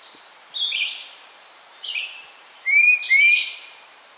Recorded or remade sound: remade